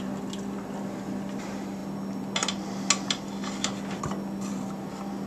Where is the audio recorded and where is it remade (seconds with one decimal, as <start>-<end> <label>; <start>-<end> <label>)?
0.0-5.3 recorded